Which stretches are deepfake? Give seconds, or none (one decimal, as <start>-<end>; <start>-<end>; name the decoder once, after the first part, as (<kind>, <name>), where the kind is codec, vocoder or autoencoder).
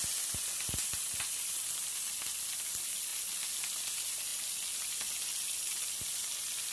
none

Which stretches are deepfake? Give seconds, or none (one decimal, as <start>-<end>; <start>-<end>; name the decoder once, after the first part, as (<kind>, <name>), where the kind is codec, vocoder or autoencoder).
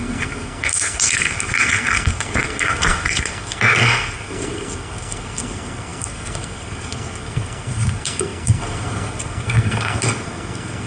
0.0-10.9 (codec, SNAC)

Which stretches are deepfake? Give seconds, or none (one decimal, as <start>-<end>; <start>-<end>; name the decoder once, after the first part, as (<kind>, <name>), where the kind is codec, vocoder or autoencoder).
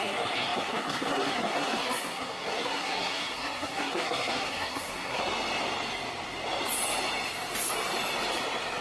0.0-5.2 (codec, SNAC)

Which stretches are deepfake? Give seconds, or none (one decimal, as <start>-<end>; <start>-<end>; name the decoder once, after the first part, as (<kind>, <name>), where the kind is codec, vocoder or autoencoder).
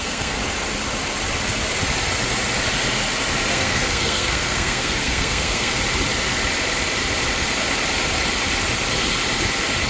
0.0-0.4 (codec, SNAC); 3.5-5.7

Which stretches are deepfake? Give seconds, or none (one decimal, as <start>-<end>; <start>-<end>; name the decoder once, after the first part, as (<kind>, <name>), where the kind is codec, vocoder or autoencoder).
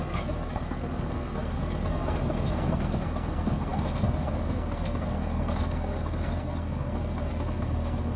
0.0-8.2 (codec, SNAC)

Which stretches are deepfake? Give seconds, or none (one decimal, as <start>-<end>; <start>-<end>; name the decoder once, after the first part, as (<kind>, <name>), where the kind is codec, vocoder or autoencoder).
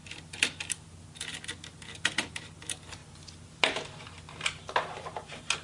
none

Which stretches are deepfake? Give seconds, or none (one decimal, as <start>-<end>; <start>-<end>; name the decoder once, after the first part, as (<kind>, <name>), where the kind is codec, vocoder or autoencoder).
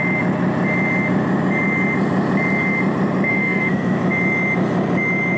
3.3-4.0 (codec, SNAC)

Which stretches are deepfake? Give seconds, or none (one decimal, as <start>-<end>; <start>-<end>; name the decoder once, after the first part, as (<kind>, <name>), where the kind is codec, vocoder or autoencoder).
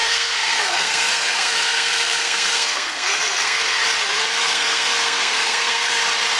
0.0-3.8 (codec, SNAC); 4.4-6.0